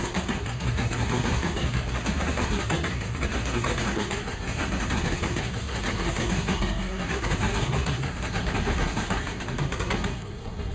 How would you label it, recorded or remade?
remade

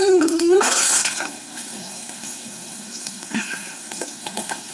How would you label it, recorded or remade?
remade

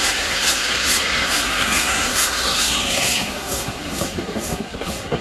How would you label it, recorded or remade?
remade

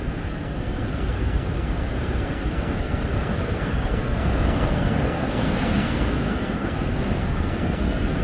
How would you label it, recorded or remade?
remade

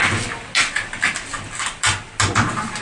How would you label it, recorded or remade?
recorded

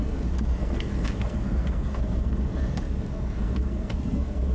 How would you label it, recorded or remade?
remade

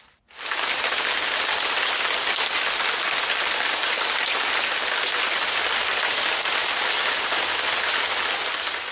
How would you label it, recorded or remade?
recorded